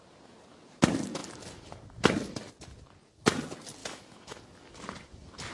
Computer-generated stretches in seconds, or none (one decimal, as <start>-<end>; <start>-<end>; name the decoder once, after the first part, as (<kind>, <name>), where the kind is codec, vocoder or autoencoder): 3.8-4.4 (autoencoder, DAC-VAE)